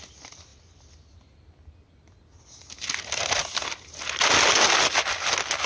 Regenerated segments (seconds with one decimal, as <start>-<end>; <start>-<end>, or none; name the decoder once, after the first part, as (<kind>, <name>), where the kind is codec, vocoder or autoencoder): none